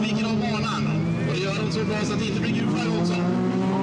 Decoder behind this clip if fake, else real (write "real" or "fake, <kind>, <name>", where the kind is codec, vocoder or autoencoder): real